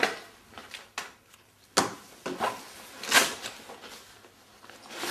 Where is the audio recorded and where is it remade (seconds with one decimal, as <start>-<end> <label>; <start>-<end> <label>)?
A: 0.0-5.1 recorded